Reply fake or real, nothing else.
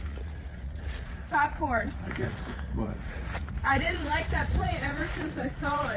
fake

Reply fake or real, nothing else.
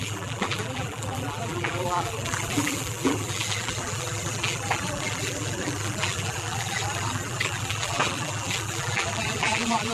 fake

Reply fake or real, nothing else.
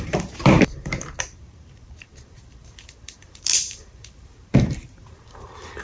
fake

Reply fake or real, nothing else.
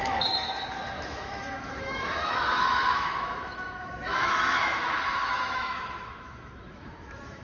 fake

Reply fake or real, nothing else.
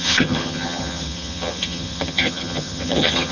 fake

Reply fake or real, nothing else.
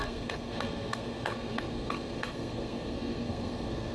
fake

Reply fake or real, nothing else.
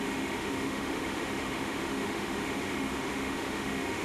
fake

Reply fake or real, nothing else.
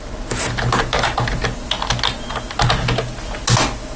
real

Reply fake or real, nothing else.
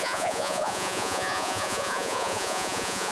fake